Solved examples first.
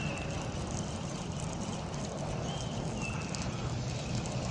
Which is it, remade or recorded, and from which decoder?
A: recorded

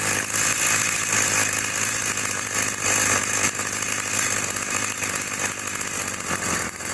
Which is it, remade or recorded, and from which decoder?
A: recorded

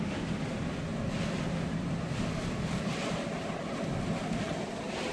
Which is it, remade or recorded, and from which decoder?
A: recorded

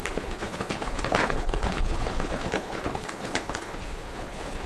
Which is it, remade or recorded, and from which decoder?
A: remade, codec, HILCodec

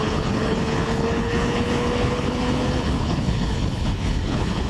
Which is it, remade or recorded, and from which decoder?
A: remade, codec, HILCodec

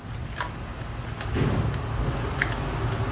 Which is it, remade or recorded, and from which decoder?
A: recorded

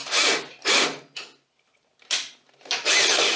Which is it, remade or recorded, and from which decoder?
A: recorded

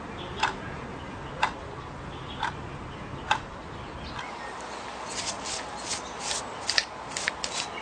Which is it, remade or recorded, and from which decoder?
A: recorded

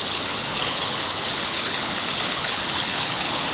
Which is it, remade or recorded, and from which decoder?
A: remade, codec, HILCodec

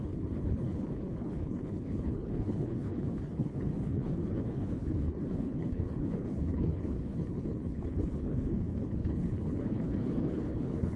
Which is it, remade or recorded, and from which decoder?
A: remade, codec, HILCodec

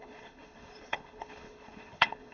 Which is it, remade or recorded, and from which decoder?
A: remade, codec, HILCodec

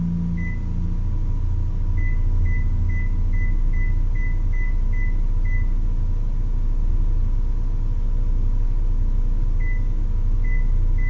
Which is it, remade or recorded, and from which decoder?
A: recorded